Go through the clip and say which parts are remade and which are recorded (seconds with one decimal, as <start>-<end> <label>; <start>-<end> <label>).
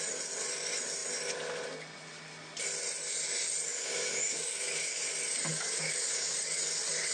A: 0.0-3.7 recorded; 3.7-5.0 remade; 5.0-5.5 recorded; 5.5-6.6 remade; 6.6-7.1 recorded